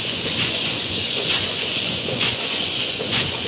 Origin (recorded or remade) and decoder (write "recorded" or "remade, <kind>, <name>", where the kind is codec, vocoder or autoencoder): remade, vocoder, Vocos